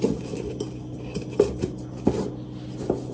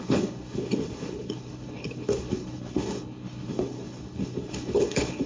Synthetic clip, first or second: second